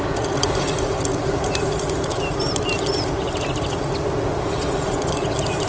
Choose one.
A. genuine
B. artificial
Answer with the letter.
A